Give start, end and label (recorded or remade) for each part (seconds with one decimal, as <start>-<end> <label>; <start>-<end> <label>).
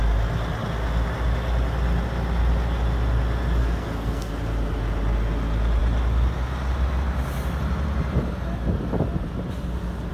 0.0-3.6 recorded; 3.6-4.3 remade; 4.3-10.1 recorded